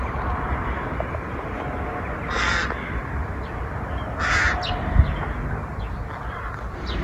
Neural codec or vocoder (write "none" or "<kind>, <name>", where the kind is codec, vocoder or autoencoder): none